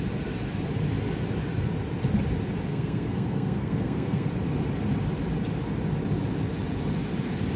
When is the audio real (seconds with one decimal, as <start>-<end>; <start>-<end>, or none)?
0.0-2.7; 4.3-7.6

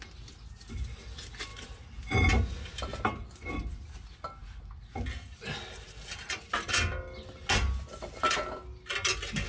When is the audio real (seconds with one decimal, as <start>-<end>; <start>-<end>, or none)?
0.0-9.5

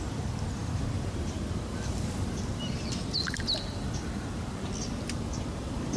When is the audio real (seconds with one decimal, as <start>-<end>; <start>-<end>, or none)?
0.0-6.0